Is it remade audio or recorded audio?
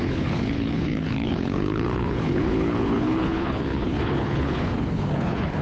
remade